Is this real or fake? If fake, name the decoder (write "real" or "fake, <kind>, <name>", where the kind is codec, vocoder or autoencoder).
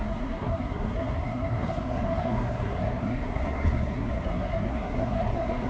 fake, codec, SNAC